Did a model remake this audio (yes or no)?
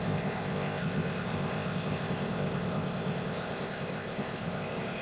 yes